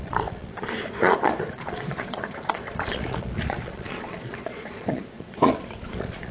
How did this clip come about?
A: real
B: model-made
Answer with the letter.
B